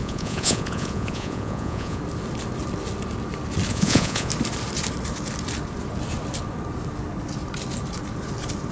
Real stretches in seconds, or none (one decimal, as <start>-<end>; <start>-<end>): 2.0-3.7; 4.3-8.7